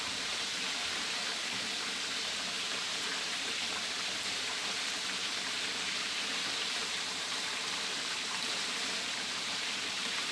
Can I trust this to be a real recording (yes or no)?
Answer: no